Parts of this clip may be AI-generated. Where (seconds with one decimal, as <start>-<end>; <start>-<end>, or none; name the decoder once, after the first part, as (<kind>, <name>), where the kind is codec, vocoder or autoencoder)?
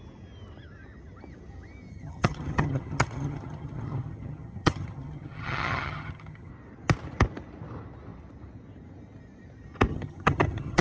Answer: 1.9-6.5 (vocoder, HiFi-GAN); 9.9-10.8